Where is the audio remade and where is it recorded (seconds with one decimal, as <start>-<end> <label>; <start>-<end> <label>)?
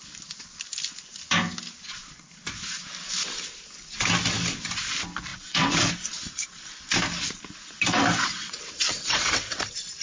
0.0-5.3 recorded; 5.3-5.9 remade; 5.9-8.4 recorded; 8.4-9.6 remade; 9.6-10.0 recorded